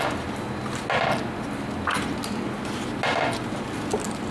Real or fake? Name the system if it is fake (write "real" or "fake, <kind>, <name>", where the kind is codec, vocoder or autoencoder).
real